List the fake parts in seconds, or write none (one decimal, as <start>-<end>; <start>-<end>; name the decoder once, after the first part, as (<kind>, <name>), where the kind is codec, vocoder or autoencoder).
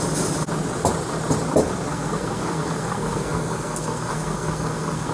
1.9-5.1 (codec, SNAC)